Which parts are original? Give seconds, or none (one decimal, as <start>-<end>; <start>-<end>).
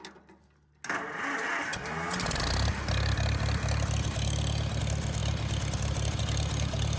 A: 0.0-7.0